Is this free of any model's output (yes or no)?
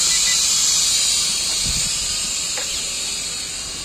yes